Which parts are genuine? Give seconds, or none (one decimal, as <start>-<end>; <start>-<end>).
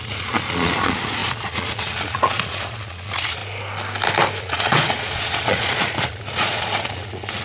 3.4-4.4